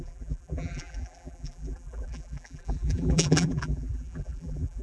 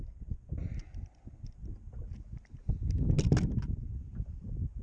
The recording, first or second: second